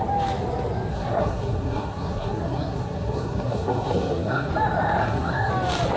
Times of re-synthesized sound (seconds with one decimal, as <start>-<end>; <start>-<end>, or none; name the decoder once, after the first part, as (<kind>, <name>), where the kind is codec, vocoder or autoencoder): 0.9-4.5 (codec, SNAC); 5.0-5.5